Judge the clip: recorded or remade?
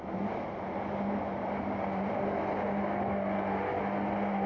recorded